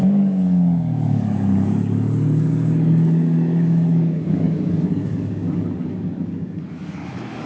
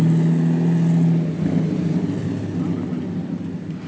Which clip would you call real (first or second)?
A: second